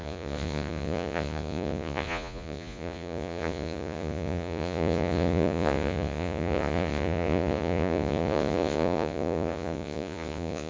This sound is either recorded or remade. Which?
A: remade